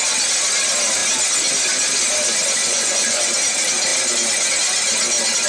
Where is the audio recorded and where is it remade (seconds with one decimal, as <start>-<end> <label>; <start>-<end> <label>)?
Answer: 0.0-2.6 recorded; 2.6-3.3 remade; 3.3-5.5 recorded